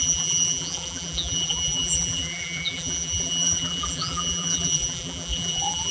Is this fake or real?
fake